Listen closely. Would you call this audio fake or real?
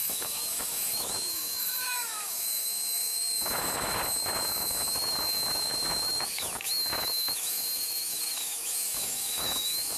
fake